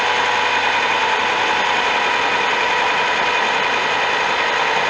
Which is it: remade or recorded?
recorded